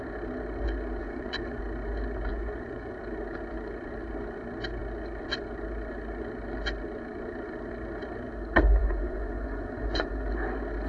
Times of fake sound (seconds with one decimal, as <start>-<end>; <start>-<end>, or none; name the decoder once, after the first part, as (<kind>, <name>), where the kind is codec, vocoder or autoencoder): 1.0-1.6 (vocoder, Vocos); 2.3-2.9; 8.8-10.1